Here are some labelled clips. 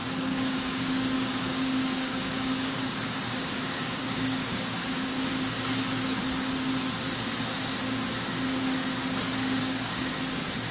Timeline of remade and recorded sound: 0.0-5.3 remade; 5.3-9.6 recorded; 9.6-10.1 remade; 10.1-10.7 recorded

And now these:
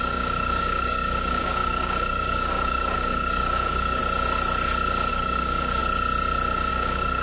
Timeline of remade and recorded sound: 0.0-4.0 remade; 4.0-5.1 recorded; 5.1-5.8 remade; 5.8-6.7 recorded; 6.7-7.2 remade

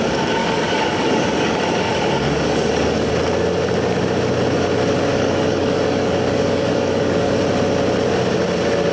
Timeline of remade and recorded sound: 0.0-0.4 recorded; 0.4-3.1 remade; 3.1-5.1 recorded; 5.1-7.4 remade; 7.4-8.9 recorded